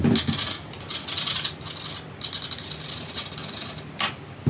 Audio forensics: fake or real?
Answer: real